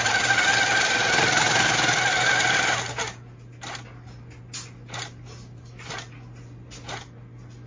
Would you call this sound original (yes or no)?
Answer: yes